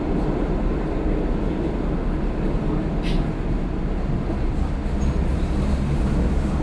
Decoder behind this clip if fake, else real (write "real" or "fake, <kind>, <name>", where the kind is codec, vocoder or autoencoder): real